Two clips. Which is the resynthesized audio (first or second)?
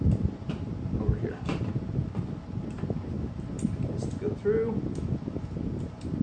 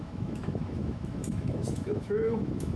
second